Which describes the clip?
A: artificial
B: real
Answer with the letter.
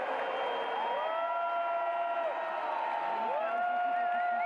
B